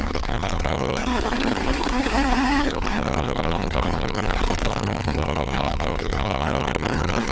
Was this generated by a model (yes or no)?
yes